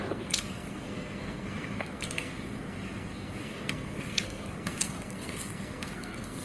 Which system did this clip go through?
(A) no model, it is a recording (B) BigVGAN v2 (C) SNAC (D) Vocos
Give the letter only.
C